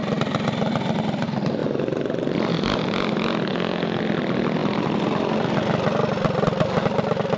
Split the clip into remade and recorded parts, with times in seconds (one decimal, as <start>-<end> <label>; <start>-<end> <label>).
0.0-3.5 recorded; 3.5-4.0 remade; 4.0-7.4 recorded

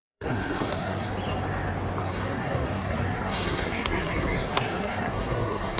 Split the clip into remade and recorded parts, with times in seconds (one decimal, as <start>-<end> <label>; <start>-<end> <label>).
0.0-1.1 remade; 1.1-2.0 recorded; 2.0-5.8 remade

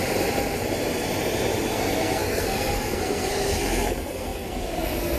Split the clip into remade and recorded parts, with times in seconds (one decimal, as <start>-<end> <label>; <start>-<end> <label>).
0.0-1.7 recorded; 1.7-5.2 remade